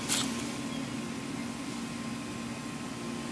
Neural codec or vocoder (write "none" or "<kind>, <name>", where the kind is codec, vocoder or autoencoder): none